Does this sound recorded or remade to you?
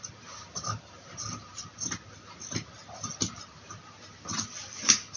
recorded